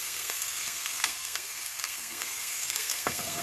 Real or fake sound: fake